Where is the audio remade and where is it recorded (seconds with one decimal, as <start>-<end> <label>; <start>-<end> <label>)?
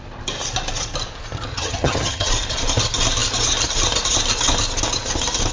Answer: 0.0-1.5 recorded; 1.5-2.3 remade; 2.3-5.5 recorded